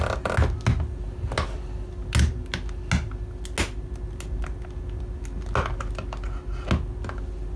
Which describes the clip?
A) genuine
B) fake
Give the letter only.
A